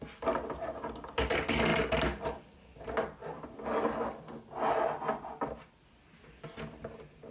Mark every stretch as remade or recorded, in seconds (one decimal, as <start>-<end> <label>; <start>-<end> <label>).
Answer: 0.0-7.3 recorded